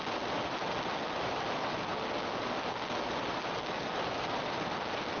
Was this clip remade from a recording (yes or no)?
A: no